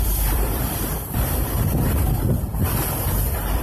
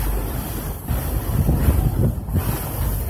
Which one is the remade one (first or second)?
first